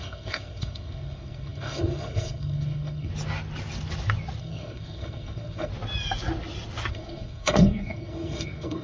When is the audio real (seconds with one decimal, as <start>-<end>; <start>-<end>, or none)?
3.1-4.4; 5.7-6.9